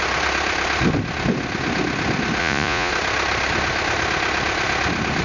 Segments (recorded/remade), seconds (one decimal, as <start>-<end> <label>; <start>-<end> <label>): 0.0-2.4 recorded; 2.4-2.9 remade; 2.9-5.2 recorded

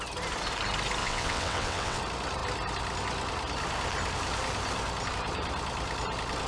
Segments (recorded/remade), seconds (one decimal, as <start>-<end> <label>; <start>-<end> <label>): 0.0-1.0 recorded; 1.0-2.0 remade; 2.0-6.5 recorded

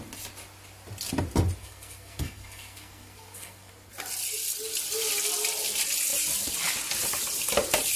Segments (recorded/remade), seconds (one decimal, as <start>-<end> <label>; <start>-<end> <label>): 0.0-1.6 recorded; 1.6-3.7 remade; 3.7-8.0 recorded

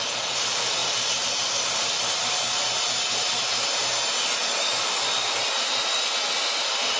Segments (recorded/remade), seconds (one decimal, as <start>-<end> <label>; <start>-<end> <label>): 0.0-3.9 remade; 3.9-5.4 recorded; 5.4-7.0 remade

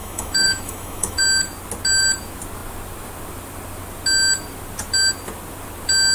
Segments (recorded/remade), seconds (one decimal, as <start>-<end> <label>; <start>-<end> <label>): 0.0-1.2 remade; 1.2-6.1 recorded

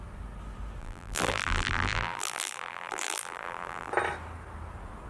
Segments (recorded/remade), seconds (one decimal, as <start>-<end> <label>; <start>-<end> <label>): 0.0-0.8 recorded; 0.8-3.9 remade; 3.9-5.1 recorded

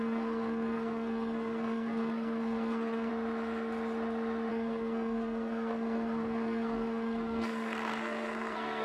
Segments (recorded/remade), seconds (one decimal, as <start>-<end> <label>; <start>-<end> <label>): 0.0-3.1 remade; 3.1-4.5 recorded; 4.5-8.8 remade

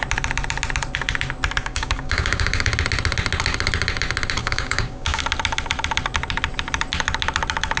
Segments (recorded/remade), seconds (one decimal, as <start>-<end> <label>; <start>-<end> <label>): 0.0-1.6 recorded; 1.6-2.7 remade; 2.7-4.4 recorded; 4.4-5.2 remade; 5.2-7.8 recorded